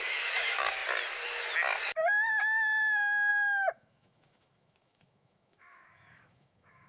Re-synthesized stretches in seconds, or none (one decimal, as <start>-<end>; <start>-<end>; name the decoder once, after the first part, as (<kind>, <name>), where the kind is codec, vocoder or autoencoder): 0.0-0.8 (autoencoder, DAC-VAE); 3.3-6.9